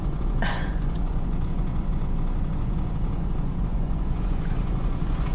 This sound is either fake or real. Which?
fake